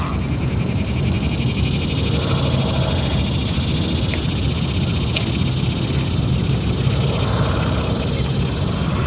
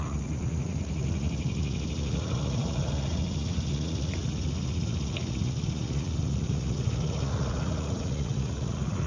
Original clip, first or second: first